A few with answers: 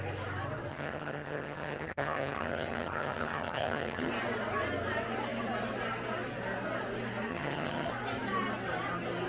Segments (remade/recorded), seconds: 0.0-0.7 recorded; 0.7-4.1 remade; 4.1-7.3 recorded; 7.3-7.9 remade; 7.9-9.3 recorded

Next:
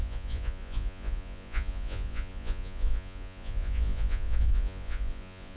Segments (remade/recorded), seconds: 0.0-5.6 remade

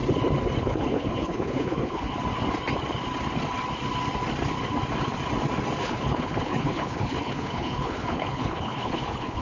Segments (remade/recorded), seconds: 0.0-0.6 recorded; 0.6-2.1 remade; 2.1-5.8 recorded; 5.8-9.4 remade

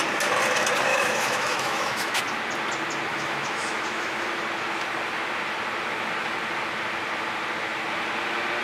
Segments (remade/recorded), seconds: 0.0-0.9 recorded; 0.9-2.2 remade; 2.2-3.1 recorded; 3.1-4.4 remade; 4.4-8.6 recorded

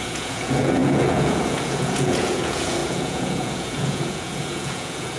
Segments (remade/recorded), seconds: 0.0-5.2 remade

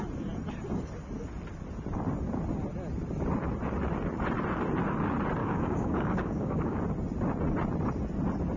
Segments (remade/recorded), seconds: 0.0-5.4 recorded; 5.4-6.8 remade; 6.8-8.6 recorded

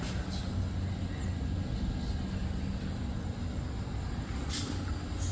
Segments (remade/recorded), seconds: 0.0-5.3 recorded